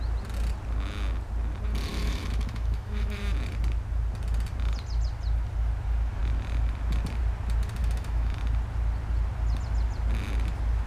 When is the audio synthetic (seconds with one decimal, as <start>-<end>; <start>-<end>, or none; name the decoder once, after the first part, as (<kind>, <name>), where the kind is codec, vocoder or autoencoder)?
1.9-3.2 (autoencoder, DAC-VAE); 7.8-8.4

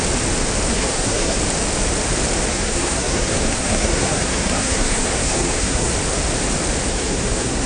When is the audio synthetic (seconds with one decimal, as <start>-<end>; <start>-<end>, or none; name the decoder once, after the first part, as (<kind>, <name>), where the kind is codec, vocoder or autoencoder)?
0.7-1.4 (codec, SNAC); 2.5-5.9; 6.9-7.7

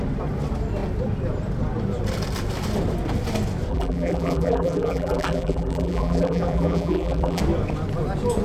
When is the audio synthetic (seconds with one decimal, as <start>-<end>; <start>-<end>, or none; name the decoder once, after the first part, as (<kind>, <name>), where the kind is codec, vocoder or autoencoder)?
3.7-7.4 (vocoder, BigVGAN v2)

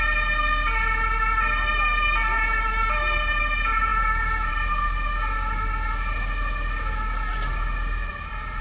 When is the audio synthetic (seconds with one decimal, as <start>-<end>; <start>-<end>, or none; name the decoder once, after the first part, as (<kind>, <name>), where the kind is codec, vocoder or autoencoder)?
8.1-8.6 (vocoder, BigVGAN v2)

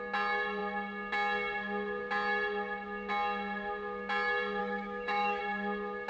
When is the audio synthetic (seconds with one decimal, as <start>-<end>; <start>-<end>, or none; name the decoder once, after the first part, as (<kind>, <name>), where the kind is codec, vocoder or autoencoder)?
4.6-5.4 (autoencoder, DAC-VAE)

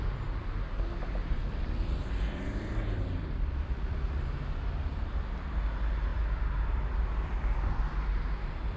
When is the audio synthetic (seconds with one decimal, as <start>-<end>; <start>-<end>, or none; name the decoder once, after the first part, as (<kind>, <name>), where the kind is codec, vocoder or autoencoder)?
1.2-4.2 (vocoder, BigVGAN v2); 4.9-5.5; 6.1-7.1

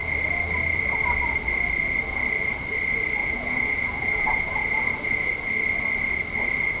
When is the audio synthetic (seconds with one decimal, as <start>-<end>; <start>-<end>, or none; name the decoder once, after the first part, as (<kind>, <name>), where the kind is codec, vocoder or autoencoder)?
3.2-5.3 (vocoder, Vocos)

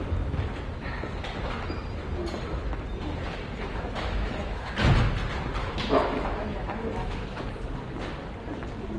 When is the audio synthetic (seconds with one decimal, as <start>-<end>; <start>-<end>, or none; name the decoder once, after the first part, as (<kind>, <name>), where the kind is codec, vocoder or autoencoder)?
3.7-4.7 (autoencoder, DAC-VAE); 5.6-7.4